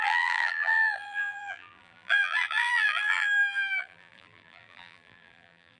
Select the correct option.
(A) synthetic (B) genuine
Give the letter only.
A